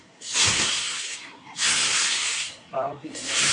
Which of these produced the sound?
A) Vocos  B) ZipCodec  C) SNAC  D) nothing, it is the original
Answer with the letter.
C